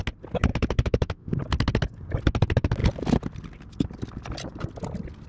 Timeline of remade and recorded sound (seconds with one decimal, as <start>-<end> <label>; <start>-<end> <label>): 0.0-0.5 recorded; 0.5-1.3 remade; 1.3-5.3 recorded